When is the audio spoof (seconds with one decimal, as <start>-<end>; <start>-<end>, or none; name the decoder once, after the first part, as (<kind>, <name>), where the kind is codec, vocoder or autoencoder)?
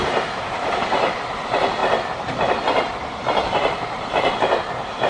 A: 0.0-5.1 (vocoder, BigVGAN v2)